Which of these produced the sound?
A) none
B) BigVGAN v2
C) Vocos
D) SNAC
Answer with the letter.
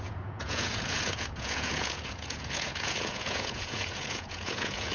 C